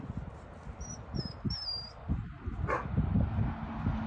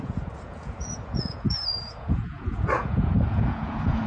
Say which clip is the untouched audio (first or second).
first